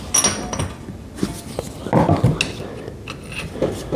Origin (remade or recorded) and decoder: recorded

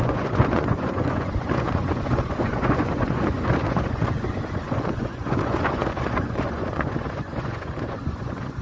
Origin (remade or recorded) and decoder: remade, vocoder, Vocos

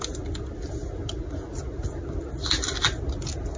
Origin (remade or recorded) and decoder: recorded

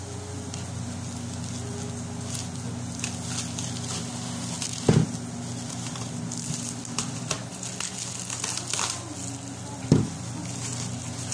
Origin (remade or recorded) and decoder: recorded